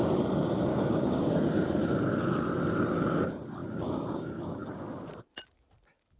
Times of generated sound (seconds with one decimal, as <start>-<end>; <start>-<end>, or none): 0.7-1.7; 3.6-4.8